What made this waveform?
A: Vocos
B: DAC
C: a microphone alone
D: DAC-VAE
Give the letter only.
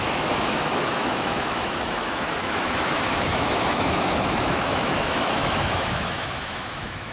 D